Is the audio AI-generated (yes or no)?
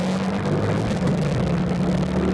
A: no